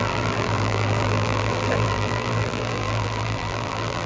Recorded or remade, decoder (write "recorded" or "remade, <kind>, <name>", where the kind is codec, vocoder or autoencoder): remade, vocoder, BigVGAN v2